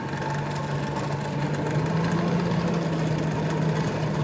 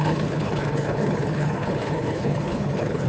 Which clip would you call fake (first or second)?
second